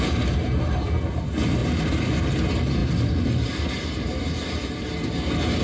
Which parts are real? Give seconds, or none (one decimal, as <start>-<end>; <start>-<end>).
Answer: 0.0-1.6; 2.2-4.6